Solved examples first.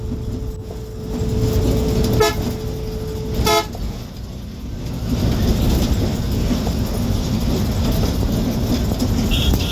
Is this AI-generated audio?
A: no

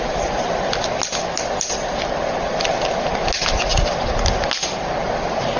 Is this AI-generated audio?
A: no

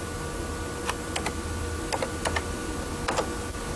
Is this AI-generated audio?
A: no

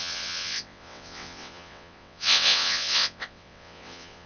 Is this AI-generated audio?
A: yes